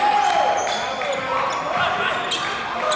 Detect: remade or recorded recorded